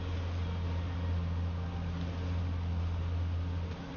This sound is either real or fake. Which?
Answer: real